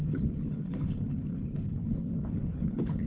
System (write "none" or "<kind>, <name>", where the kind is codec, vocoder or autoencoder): codec, HILCodec